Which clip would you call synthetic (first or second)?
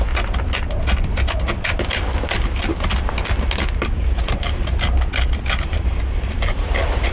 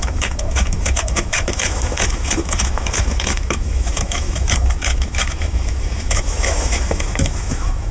second